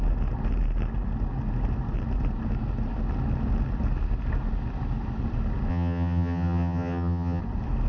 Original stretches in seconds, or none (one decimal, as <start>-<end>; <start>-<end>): 0.0-5.7; 7.4-7.9